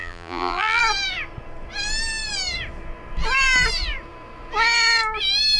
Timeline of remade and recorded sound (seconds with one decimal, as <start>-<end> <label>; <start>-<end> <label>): 0.0-0.8 remade; 0.8-5.6 recorded